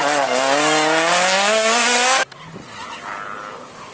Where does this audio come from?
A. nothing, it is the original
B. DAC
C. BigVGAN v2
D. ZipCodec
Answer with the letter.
A